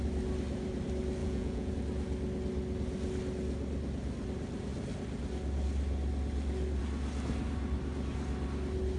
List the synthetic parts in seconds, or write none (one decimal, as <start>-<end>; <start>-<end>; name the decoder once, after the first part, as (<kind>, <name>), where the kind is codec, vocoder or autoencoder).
1.2-1.7 (vocoder, Vocos)